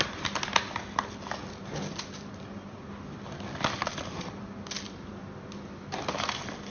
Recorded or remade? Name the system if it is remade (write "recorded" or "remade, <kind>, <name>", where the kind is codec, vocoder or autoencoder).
recorded